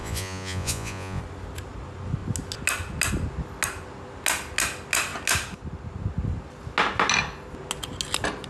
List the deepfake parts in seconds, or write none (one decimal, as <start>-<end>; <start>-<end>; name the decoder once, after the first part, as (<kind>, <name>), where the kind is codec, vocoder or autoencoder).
0.0-1.2 (vocoder, Vocos)